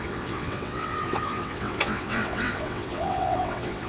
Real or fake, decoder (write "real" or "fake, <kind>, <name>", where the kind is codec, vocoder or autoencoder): fake, vocoder, WaveNeXt